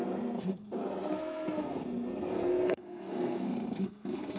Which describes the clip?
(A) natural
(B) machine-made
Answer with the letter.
B